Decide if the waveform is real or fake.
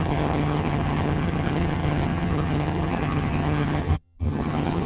fake